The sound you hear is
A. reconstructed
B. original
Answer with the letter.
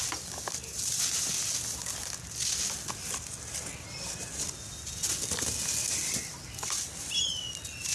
B